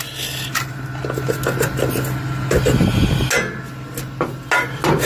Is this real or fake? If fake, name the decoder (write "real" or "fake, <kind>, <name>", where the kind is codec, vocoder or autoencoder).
real